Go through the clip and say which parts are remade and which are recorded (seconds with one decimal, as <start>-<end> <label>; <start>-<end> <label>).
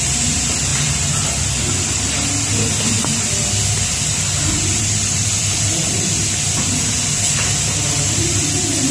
0.0-8.9 recorded